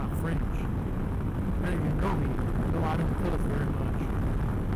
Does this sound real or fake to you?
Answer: real